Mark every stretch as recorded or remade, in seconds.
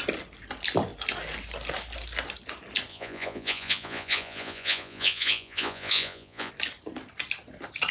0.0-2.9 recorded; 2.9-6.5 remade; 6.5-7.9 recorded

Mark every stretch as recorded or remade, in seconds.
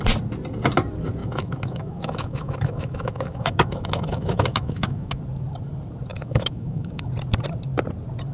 0.0-1.2 recorded; 1.2-5.2 remade; 5.2-6.1 recorded; 6.1-7.1 remade; 7.1-8.3 recorded